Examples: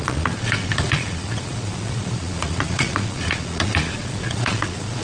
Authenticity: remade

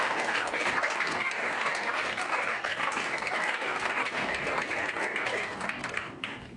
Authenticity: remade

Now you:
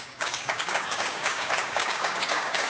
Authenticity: remade